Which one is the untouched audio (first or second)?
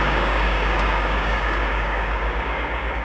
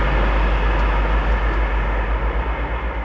second